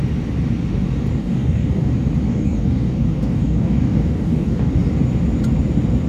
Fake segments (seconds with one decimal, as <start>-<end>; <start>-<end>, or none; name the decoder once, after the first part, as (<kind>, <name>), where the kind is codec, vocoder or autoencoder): 1.2-1.9 (codec, DAC); 2.3-4.7